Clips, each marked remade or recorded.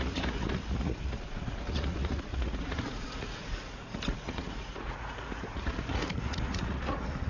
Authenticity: remade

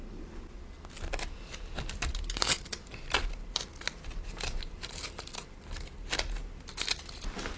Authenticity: recorded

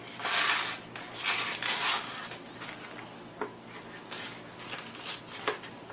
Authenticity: recorded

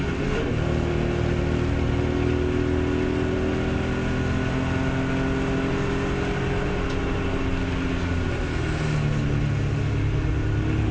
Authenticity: recorded